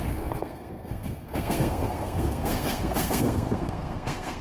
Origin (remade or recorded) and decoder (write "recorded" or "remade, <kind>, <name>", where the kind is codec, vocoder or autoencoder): remade, codec, SNAC